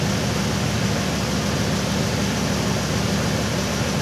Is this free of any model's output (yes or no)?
yes